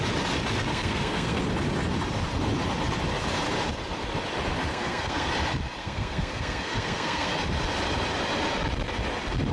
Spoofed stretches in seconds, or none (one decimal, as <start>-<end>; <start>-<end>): 0.7-1.4; 4.7-5.3; 5.8-7.3

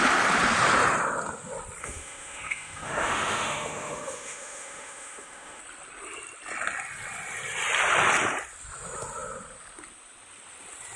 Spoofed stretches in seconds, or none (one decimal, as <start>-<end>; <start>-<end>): 1.8-5.6

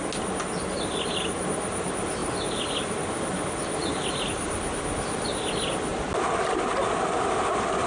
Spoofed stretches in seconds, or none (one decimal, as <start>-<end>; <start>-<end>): none

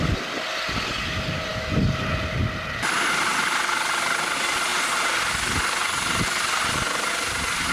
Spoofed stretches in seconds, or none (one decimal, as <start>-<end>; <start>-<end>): none

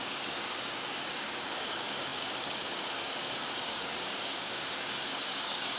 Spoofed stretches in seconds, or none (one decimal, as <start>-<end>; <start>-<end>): 0.0-5.8

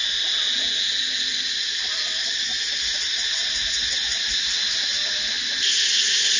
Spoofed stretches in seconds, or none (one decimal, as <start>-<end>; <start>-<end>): none

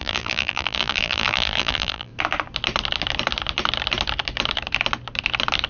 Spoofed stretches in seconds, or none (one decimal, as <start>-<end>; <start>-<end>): 0.0-2.1

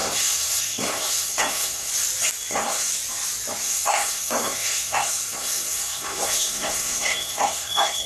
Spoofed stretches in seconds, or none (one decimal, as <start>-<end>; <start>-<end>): 0.0-1.9; 2.5-2.9; 3.6-8.1